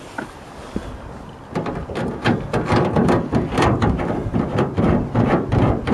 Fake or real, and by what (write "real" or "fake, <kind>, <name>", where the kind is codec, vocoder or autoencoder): real